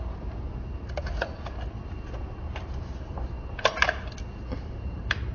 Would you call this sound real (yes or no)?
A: no